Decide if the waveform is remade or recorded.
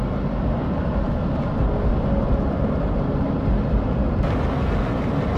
recorded